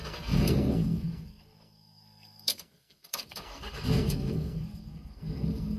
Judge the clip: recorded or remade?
remade